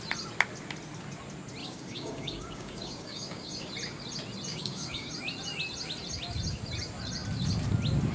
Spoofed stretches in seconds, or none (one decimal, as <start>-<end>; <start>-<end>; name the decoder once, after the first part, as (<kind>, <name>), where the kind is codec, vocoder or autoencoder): 1.6-3.7 (codec, DAC); 4.5-5.1